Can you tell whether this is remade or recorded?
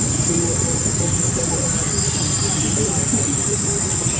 remade